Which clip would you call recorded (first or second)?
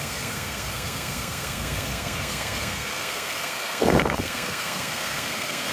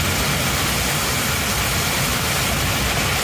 second